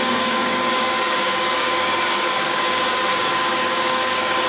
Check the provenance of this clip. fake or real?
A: fake